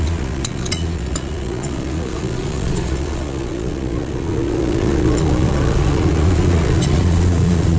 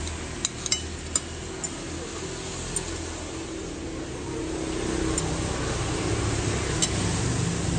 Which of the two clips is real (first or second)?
second